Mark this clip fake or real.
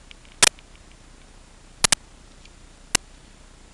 real